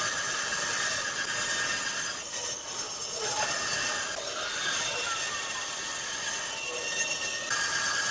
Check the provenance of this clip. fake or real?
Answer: real